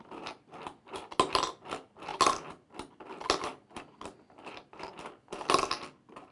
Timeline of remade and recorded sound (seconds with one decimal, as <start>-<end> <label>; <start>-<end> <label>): 0.0-6.3 recorded